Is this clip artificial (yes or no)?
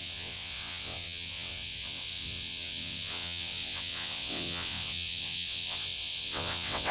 yes